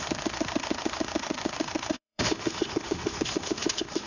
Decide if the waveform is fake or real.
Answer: fake